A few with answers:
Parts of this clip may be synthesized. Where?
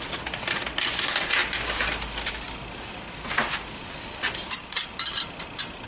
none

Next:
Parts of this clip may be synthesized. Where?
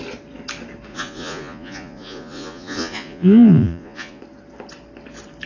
0.9-4.2 (vocoder, Vocos)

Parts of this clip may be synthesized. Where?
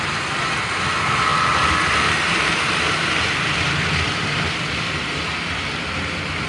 1.3-5.2 (vocoder, BigVGAN v2)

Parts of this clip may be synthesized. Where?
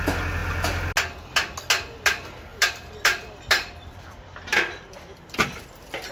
2.5-6.1 (vocoder, BigVGAN v2)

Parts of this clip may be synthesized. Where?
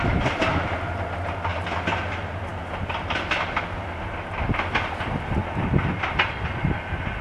none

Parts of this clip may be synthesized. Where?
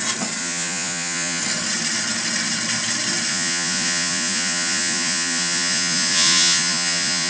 0.4-1.4 (vocoder, Vocos); 3.3-7.3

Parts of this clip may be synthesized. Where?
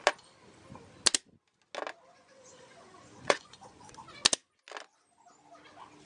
2.1-3.9 (vocoder, Vocos)